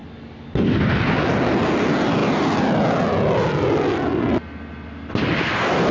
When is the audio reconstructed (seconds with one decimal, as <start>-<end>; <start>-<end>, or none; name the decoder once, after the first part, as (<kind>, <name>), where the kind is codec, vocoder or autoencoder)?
none